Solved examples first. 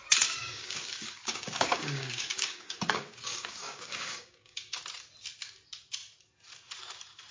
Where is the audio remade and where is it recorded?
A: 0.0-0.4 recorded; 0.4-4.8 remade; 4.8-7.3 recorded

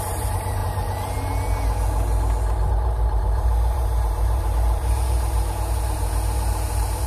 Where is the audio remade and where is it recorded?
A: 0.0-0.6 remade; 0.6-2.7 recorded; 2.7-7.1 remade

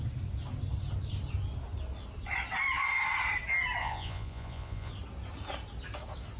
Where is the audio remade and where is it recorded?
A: 0.0-3.8 recorded; 3.8-4.9 remade; 4.9-6.4 recorded

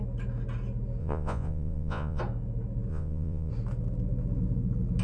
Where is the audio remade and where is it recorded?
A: 0.0-1.0 recorded; 1.0-2.2 remade; 2.2-2.9 recorded; 2.9-3.5 remade; 3.5-5.0 recorded

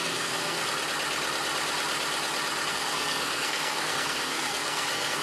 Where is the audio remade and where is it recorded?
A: 0.0-0.6 remade; 0.6-2.7 recorded; 2.7-5.2 remade